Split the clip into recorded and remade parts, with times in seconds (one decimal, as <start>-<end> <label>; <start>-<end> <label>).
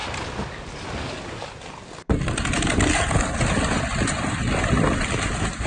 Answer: 0.0-5.7 recorded